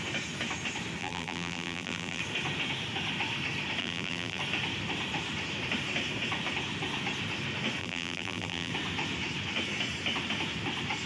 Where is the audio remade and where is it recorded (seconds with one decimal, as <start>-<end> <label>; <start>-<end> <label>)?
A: 0.0-1.0 recorded; 1.0-2.2 remade; 2.2-3.8 recorded; 3.8-4.4 remade; 4.4-7.8 recorded; 7.8-8.7 remade; 8.7-11.1 recorded

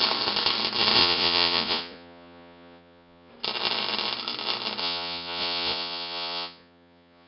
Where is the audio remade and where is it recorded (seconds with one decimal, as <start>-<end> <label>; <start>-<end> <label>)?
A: 0.0-1.0 recorded; 1.0-3.3 remade; 3.3-4.8 recorded; 4.8-7.3 remade

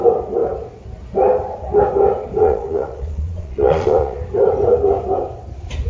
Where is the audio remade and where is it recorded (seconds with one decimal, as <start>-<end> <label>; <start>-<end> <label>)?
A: 0.0-2.4 recorded; 2.4-4.2 remade; 4.2-5.9 recorded

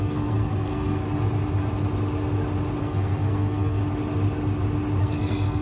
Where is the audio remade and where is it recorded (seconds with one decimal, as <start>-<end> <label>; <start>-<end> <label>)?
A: 0.0-1.0 remade; 1.0-2.8 recorded; 2.8-3.8 remade; 3.8-5.0 recorded; 5.0-5.6 remade

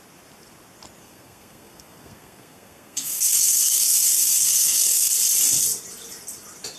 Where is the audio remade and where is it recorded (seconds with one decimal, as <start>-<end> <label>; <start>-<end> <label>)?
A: 0.0-1.0 recorded; 1.0-5.1 remade; 5.1-6.8 recorded